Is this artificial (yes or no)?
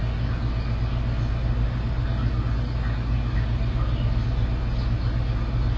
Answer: no